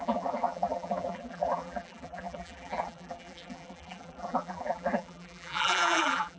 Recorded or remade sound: remade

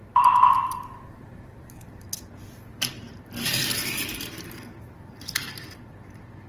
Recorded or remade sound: remade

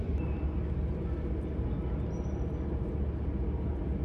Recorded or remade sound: recorded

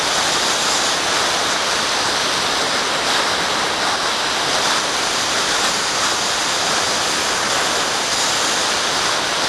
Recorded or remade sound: recorded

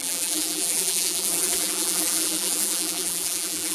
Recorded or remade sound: remade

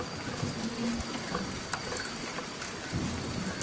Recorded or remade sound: recorded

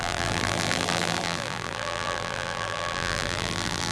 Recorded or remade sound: remade